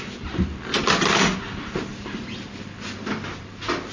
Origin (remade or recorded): recorded